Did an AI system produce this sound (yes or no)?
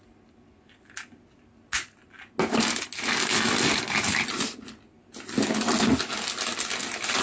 no